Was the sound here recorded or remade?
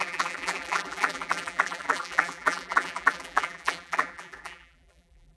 remade